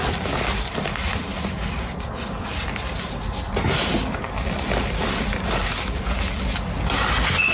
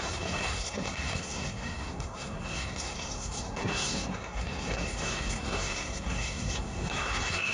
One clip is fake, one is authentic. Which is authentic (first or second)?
first